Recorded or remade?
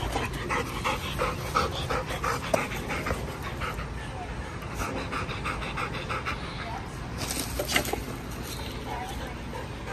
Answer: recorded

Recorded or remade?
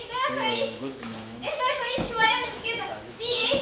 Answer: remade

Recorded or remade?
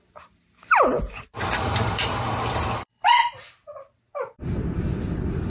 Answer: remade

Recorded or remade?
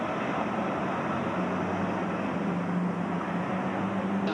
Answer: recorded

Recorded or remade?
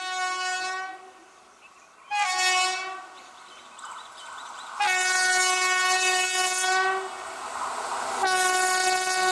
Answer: recorded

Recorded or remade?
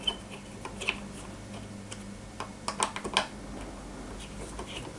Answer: recorded